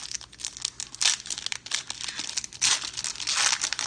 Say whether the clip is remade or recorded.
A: recorded